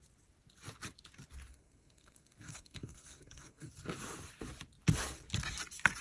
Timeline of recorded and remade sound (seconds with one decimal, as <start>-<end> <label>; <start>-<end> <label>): 0.0-1.5 recorded; 1.5-3.7 remade; 3.7-6.0 recorded

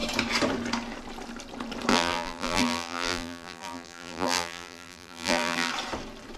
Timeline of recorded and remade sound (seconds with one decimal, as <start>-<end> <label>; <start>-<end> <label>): 0.0-1.9 recorded; 1.9-5.7 remade; 5.7-6.4 recorded

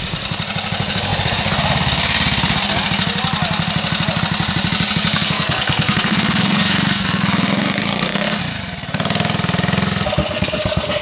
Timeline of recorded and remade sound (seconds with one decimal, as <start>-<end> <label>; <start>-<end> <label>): 0.0-5.1 recorded; 5.1-8.4 remade; 8.4-10.2 recorded; 10.2-11.0 remade

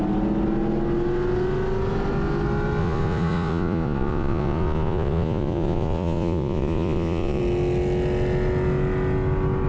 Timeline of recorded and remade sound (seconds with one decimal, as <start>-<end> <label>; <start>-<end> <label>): 0.0-2.8 recorded; 2.8-7.4 remade; 7.4-9.7 recorded

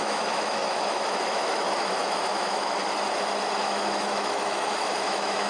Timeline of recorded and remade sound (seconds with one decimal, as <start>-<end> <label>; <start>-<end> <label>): 0.0-2.8 remade; 2.8-3.6 recorded; 3.6-5.5 remade